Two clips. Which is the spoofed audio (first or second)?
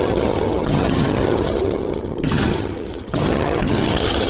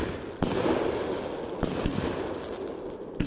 first